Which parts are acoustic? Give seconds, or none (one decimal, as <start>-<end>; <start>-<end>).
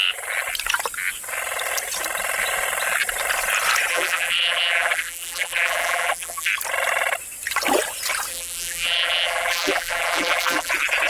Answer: 0.0-3.9; 6.5-8.3; 10.7-11.1